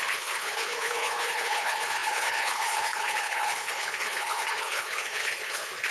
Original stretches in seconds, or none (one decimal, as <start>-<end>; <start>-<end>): none